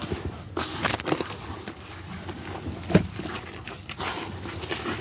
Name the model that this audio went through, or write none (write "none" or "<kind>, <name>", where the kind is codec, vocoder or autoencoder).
none